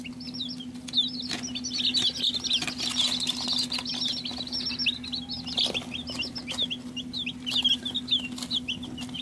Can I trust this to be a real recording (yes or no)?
yes